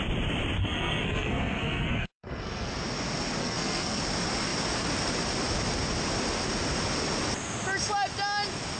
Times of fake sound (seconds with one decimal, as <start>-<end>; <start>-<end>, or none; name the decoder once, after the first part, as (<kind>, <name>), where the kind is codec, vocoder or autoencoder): 0.6-2.7 (codec, SNAC); 3.4-4.0